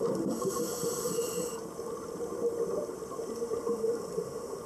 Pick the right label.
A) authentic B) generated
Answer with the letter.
A